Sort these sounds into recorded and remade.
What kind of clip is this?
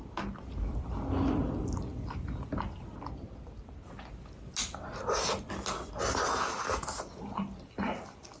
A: recorded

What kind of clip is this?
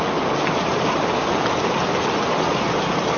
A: recorded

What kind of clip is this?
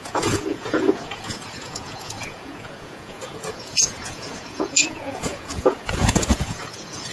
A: remade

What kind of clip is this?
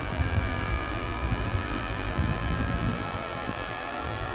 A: remade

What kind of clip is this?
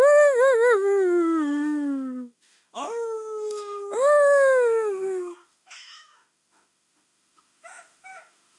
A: remade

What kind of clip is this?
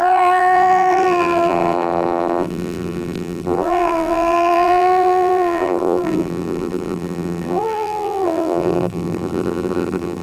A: remade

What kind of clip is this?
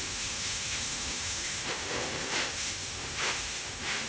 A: remade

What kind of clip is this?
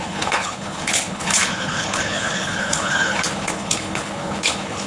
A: remade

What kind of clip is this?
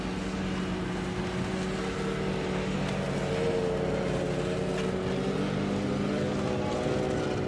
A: recorded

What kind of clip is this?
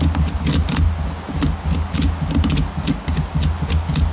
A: recorded